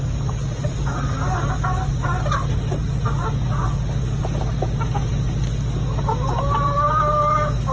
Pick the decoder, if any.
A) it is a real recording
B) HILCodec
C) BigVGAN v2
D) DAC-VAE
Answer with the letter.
A